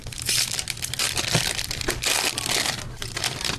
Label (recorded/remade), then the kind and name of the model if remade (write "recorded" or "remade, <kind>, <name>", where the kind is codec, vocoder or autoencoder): recorded